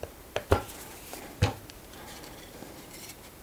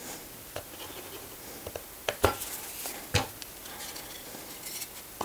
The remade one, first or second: first